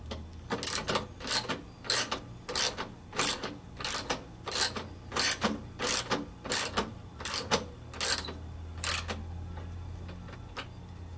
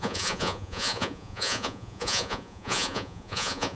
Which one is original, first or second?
first